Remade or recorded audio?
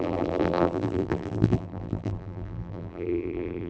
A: remade